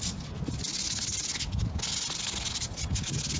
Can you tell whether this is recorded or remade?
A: recorded